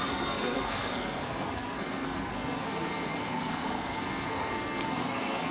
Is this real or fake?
fake